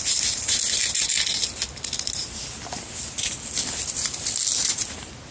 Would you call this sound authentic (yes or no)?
yes